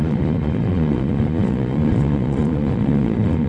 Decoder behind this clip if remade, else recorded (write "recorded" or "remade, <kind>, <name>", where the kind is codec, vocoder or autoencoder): remade, vocoder, Vocos